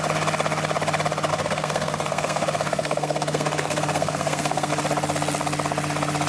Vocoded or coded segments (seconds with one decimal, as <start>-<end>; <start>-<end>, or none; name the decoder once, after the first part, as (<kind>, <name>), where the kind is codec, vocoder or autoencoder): 1.3-4.7 (codec, SNAC)